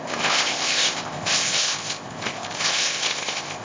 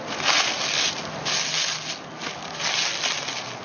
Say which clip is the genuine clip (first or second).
second